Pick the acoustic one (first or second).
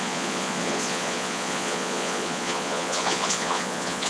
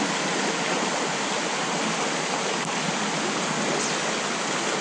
second